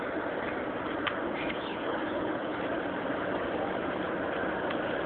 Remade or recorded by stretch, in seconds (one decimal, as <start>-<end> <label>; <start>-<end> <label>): 0.0-1.7 recorded; 1.7-2.6 remade; 2.6-5.1 recorded